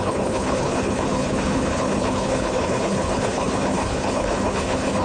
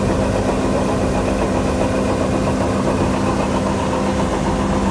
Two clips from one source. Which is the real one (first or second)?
second